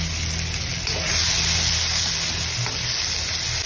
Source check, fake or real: real